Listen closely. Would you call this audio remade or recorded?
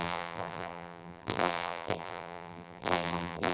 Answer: remade